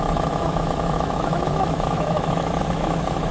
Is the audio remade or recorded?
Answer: remade